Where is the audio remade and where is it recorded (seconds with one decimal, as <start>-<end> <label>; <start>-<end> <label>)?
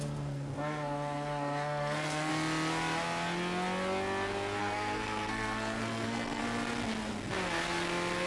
0.0-2.3 remade; 2.3-4.6 recorded; 4.6-6.4 remade; 6.4-8.3 recorded